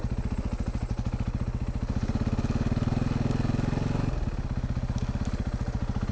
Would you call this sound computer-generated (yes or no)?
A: no